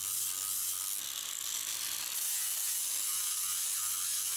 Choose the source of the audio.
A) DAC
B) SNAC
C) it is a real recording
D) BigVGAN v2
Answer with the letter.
C